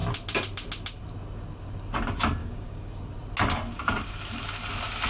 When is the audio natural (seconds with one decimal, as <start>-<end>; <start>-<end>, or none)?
0.0-2.4; 2.9-5.1